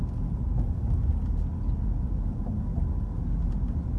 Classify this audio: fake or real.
real